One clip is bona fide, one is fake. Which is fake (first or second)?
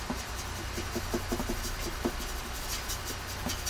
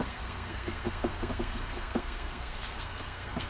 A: second